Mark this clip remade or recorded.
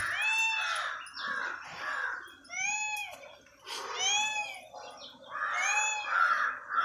recorded